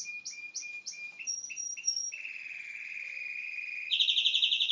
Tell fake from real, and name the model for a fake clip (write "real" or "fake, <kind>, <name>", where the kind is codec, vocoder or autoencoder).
real